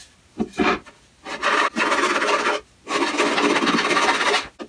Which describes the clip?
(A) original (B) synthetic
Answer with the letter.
A